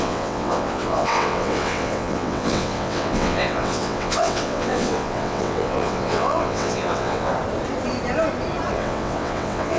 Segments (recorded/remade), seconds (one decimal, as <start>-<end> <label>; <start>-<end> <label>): 0.0-7.3 remade; 7.3-8.7 recorded; 8.7-9.8 remade